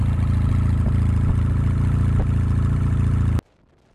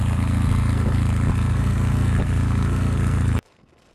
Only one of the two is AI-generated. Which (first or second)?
second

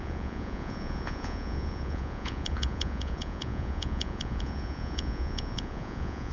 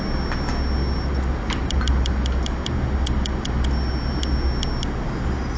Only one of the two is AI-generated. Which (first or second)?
first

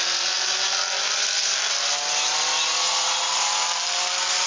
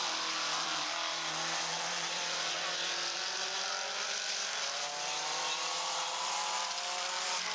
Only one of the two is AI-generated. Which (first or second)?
second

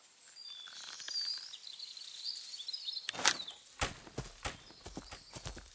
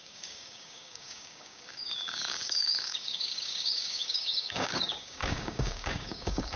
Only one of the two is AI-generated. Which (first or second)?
second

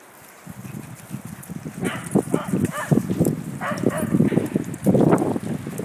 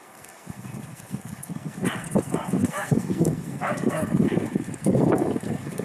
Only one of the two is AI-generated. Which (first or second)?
second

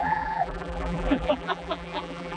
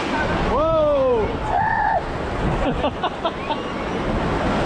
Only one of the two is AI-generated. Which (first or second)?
first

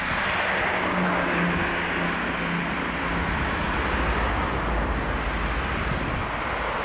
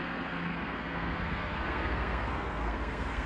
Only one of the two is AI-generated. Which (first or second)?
second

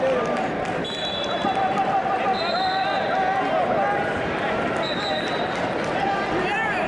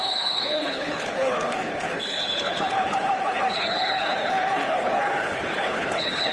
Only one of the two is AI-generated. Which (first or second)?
second